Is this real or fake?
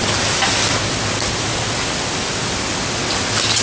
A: real